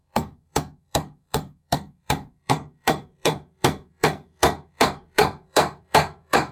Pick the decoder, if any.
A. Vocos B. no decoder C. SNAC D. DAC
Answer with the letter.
C